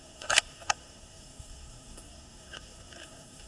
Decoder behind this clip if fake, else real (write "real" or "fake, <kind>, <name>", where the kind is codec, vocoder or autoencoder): fake, codec, SNAC